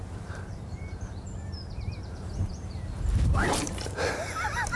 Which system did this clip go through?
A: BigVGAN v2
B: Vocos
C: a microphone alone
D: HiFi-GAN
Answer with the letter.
A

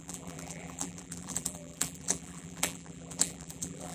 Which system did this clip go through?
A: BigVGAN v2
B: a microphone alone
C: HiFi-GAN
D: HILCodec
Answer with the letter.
A